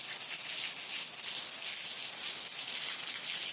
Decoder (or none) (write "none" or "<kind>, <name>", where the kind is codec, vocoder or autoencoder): none